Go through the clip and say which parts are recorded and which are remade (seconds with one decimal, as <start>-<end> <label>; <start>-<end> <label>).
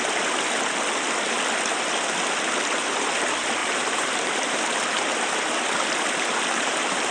0.0-3.6 recorded; 3.6-4.6 remade; 4.6-6.3 recorded; 6.3-7.1 remade